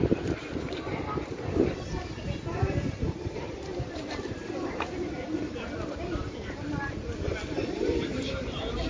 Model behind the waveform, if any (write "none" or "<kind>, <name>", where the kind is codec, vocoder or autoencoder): vocoder, BigVGAN v2